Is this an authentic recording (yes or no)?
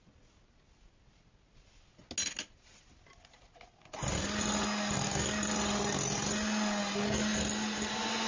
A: yes